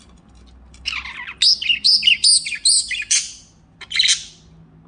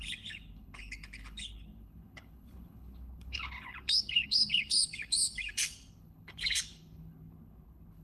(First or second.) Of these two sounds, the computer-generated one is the second